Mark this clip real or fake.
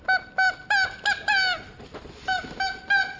real